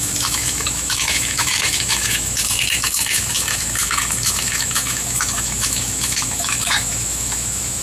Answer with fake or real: fake